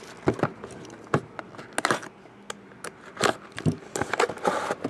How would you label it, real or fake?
real